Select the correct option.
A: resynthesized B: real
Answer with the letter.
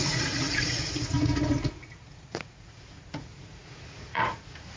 A